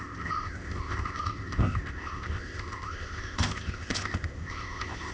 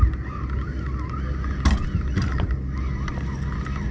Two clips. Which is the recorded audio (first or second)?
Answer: second